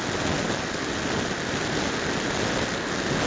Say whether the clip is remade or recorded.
recorded